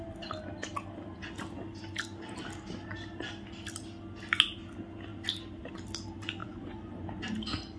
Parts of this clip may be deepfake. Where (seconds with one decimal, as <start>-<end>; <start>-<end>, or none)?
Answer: 6.4-7.2